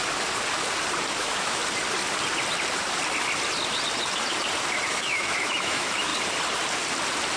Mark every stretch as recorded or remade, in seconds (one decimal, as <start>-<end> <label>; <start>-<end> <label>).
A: 0.0-1.2 recorded; 1.2-1.6 remade; 1.6-4.9 recorded; 4.9-6.1 remade; 6.1-7.4 recorded